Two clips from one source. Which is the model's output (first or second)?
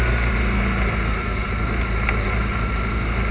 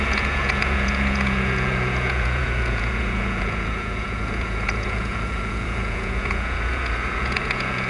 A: second